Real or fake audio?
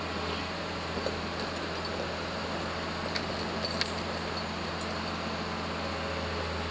real